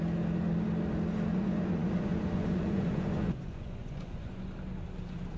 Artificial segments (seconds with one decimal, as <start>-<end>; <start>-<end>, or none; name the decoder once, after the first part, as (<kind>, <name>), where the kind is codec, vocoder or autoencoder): 1.3-4.5 (vocoder, Vocos)